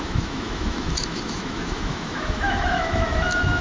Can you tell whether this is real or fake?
fake